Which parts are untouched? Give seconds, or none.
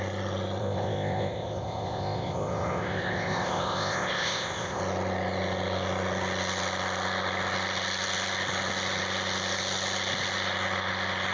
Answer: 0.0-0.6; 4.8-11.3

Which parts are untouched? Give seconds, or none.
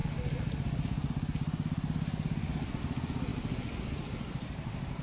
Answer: 0.0-5.0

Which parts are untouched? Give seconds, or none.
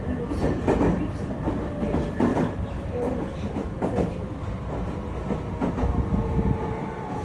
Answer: 0.0-2.3; 3.7-7.2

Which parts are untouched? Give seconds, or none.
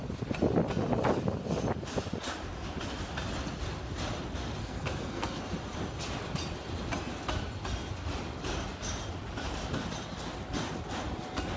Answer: 0.0-4.6; 5.4-11.6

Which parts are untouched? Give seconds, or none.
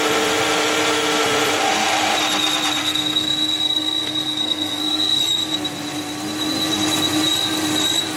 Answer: 0.0-2.8; 5.2-8.2